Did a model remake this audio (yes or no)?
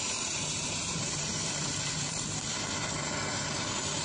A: yes